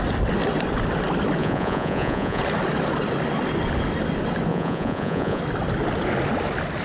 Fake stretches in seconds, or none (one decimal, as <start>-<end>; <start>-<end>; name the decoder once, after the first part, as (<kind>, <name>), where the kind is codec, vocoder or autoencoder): 1.4-2.4 (vocoder, Vocos); 4.5-5.4